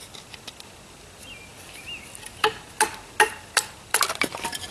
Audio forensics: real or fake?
real